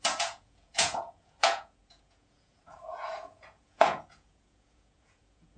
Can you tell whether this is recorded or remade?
remade